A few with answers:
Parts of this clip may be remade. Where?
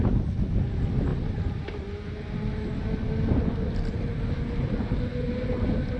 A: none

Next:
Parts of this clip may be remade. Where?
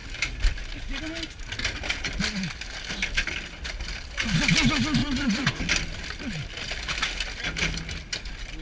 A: 5.0-5.6 (vocoder, Vocos)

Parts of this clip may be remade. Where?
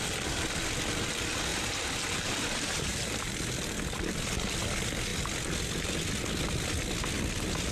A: 1.5-3.3 (vocoder, BigVGAN v2)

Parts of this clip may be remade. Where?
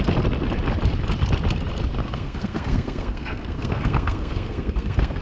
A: 2.0-5.2 (codec, SNAC)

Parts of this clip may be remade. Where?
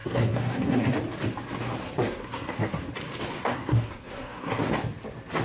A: 0.0-0.8 (codec, SNAC); 1.8-2.9; 3.4-4.6